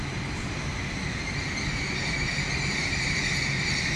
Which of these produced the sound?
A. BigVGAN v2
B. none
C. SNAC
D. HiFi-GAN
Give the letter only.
B